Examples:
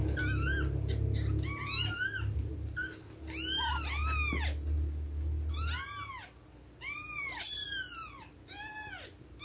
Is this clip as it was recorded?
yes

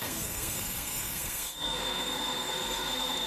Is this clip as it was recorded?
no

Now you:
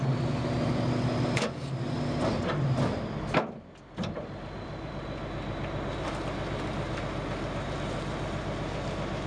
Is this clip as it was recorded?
yes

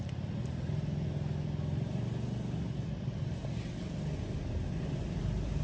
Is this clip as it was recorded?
yes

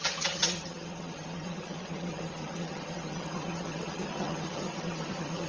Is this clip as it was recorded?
no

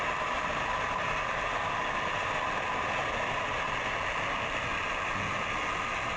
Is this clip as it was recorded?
yes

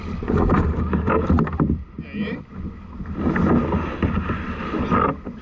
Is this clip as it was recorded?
yes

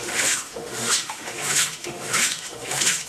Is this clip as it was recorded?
no